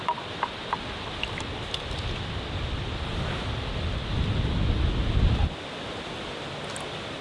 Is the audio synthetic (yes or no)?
no